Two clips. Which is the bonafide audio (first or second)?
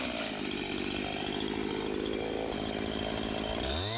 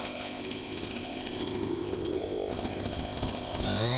first